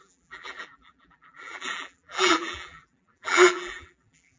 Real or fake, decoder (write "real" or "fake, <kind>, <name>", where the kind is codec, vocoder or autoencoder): fake, vocoder, BigVGAN v2